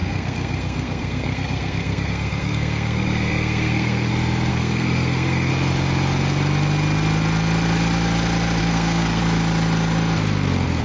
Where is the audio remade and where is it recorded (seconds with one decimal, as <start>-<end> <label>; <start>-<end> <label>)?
0.0-4.1 remade; 4.1-4.5 recorded; 4.5-5.5 remade; 5.5-8.6 recorded; 8.6-9.2 remade; 9.2-10.8 recorded